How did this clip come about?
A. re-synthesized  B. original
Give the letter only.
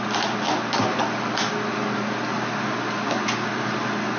B